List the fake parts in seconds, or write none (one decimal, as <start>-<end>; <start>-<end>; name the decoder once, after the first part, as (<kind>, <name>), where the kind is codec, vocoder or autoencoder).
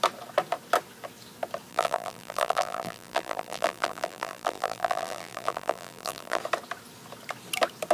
1.7-6.4 (vocoder, BigVGAN v2)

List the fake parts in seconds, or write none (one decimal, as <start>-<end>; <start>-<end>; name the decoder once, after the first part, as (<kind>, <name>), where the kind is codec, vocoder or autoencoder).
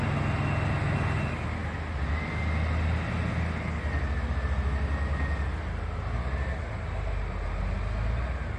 none